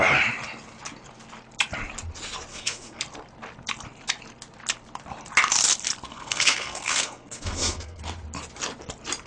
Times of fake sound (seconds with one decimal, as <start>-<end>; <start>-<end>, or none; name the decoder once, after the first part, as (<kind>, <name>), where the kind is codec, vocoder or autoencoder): 2.5-3.0 (codec, SNAC); 6.1-8.0